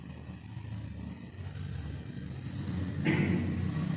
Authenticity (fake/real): real